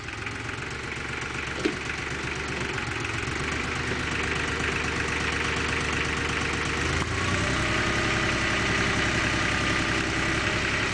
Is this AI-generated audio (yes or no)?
no